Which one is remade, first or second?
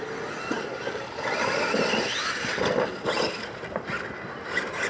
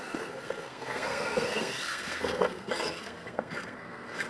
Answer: second